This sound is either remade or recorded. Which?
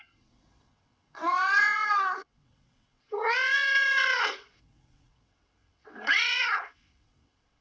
remade